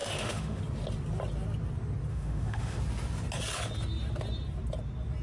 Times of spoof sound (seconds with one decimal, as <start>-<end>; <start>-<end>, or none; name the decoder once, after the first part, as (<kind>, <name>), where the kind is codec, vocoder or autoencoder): 0.0-0.6 (autoencoder, DAC-VAE); 2.1-2.8

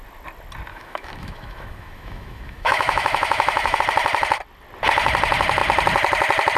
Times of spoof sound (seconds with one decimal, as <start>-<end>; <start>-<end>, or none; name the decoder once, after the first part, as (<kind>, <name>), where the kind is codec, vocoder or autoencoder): 0.7-3.8 (autoencoder, DAC-VAE)

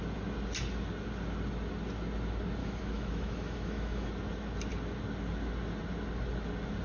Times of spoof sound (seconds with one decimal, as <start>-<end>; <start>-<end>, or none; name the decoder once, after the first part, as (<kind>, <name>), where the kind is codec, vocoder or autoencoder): 2.6-4.1 (autoencoder, DAC-VAE)

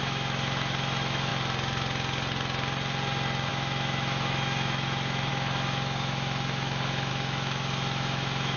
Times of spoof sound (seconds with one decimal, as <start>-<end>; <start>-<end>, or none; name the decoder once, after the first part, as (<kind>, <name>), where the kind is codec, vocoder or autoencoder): 0.0-1.3 (autoencoder, DAC-VAE); 3.5-8.6

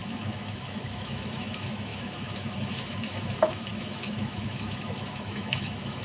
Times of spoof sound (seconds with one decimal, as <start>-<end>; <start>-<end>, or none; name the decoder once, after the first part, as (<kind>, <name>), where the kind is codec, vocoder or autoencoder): 0.0-6.0 (autoencoder, DAC-VAE)

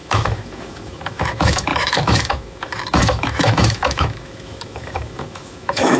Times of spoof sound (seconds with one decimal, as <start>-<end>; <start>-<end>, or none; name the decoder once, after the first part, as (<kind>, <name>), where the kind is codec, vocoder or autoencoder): 0.0-6.0 (autoencoder, DAC-VAE)

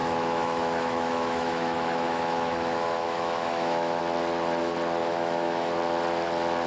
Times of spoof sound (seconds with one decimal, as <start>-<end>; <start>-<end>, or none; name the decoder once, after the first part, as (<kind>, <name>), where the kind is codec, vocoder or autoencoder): 0.0-4.0 (autoencoder, DAC-VAE); 5.0-5.7